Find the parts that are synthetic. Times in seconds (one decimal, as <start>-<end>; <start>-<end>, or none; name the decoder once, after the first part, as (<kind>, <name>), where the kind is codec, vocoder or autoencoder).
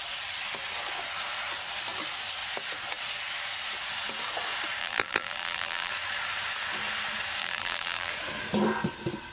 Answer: 4.8-5.9 (vocoder, BigVGAN v2); 7.4-8.1